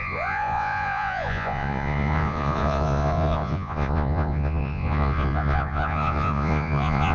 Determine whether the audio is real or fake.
fake